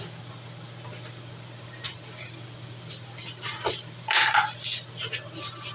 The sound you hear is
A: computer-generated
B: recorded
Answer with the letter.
B